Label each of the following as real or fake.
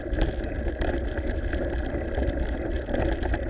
real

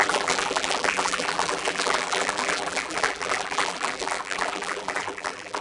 fake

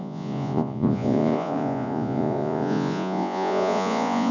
fake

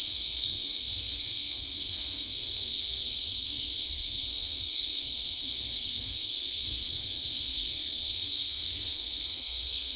fake